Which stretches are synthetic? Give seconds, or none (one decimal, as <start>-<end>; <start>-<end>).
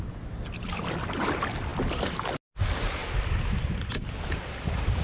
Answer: none